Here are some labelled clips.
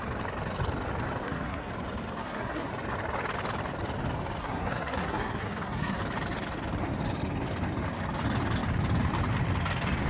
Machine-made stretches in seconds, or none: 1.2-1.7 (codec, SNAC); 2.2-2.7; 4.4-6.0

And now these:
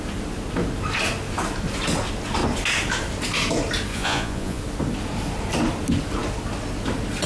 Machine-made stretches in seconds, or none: 3.9-4.6 (vocoder, Vocos)

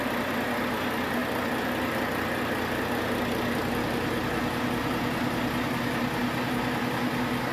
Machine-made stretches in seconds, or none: none

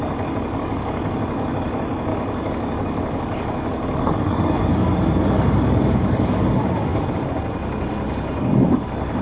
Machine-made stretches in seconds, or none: 0.0-6.9 (codec, DAC); 8.4-9.2